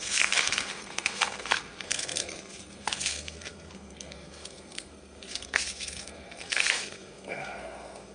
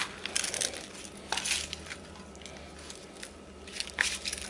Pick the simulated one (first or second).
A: first